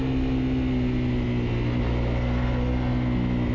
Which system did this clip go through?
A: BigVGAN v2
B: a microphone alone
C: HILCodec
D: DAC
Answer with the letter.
B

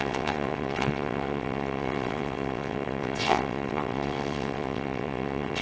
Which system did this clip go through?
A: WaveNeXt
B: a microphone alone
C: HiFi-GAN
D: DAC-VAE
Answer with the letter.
A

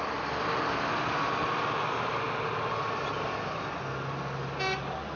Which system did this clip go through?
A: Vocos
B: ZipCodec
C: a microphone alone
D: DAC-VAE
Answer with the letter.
C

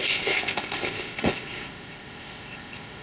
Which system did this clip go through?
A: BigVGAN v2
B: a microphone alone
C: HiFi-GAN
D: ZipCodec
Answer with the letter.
D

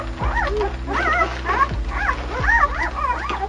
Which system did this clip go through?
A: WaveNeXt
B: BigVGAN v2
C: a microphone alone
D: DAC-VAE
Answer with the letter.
C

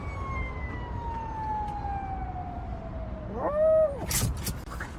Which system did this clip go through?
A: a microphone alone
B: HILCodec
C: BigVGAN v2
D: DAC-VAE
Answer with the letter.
A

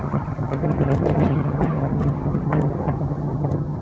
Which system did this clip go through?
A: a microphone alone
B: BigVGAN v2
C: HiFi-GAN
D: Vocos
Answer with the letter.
C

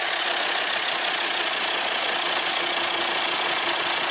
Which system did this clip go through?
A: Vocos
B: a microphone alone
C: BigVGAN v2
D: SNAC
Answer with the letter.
A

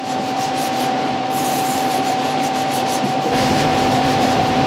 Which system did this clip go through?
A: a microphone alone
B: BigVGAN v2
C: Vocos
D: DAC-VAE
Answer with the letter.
B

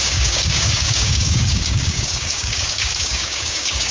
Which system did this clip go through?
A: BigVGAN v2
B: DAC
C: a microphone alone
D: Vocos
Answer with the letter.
B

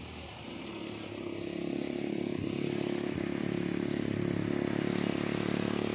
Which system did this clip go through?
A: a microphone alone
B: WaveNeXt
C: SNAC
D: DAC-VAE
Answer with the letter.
A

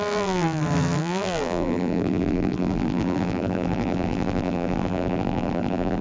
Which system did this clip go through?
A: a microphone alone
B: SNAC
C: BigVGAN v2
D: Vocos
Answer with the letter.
C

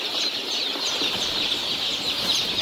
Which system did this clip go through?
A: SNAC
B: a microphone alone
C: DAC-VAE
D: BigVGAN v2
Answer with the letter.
B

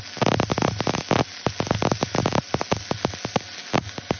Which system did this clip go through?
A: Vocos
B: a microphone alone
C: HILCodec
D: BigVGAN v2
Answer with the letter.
B